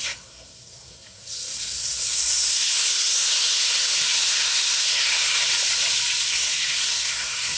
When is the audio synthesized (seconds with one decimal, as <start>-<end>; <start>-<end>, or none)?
0.0-5.4; 6.3-7.6